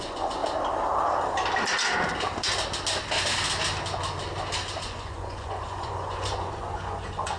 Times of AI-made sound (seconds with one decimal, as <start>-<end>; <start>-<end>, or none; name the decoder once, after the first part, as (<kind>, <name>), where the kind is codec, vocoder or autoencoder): 0.0-0.4 (vocoder, Vocos); 4.8-7.4